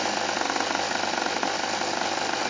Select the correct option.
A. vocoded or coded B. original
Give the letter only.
B